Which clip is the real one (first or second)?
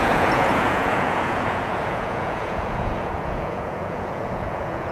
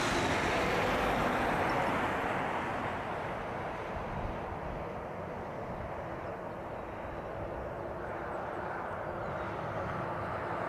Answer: second